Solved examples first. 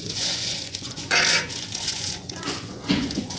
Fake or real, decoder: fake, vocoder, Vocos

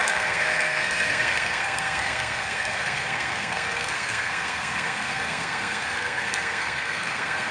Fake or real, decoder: fake, codec, SNAC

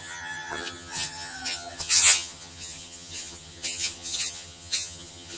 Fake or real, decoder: fake, vocoder, HiFi-GAN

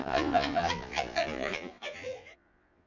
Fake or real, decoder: fake, vocoder, Vocos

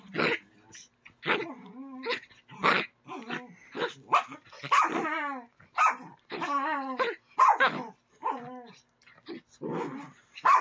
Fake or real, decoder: real